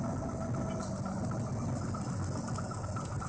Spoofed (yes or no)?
no